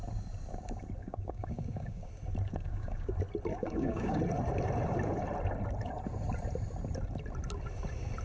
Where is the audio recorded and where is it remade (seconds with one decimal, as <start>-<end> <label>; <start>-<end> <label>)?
0.0-1.0 recorded; 1.0-2.1 remade; 2.1-2.5 recorded; 2.5-3.1 remade; 3.1-3.5 recorded; 3.5-4.2 remade; 4.2-8.2 recorded